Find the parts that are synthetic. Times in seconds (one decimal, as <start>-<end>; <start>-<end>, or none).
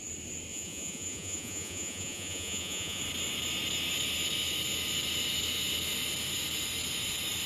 0.5-3.0